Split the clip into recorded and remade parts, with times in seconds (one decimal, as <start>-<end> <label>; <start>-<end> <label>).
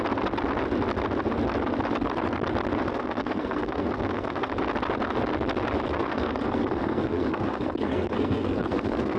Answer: 0.0-2.9 recorded; 2.9-4.5 remade; 4.5-5.9 recorded; 5.9-9.2 remade